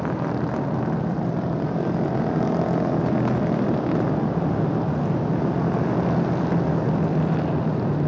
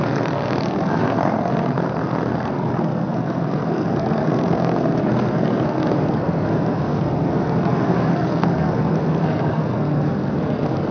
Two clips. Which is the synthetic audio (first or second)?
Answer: second